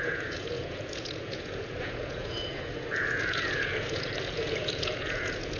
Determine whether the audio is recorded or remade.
remade